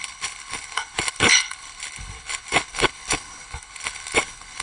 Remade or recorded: remade